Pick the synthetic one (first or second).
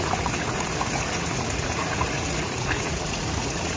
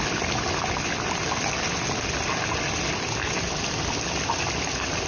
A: first